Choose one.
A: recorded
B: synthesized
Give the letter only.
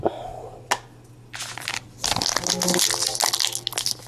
A